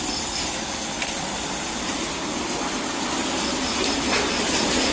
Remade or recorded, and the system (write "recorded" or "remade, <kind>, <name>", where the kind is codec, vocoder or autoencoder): recorded